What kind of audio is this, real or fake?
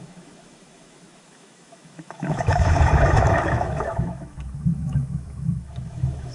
fake